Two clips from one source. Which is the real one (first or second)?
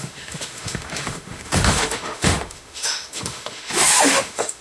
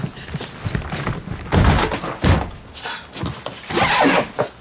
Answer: second